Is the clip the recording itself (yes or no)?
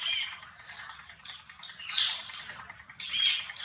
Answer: yes